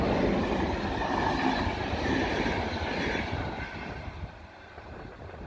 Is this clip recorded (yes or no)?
yes